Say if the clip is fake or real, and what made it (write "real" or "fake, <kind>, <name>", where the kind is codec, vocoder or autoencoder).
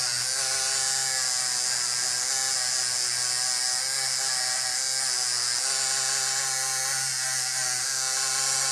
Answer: real